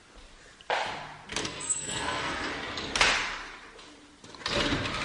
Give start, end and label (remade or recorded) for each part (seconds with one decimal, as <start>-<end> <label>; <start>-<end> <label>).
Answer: 0.0-1.4 recorded; 1.4-2.5 remade; 2.5-5.0 recorded